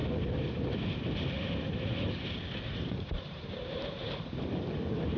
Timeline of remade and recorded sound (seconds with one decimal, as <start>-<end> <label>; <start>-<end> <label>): 0.0-1.9 recorded; 1.9-4.0 remade; 4.0-5.2 recorded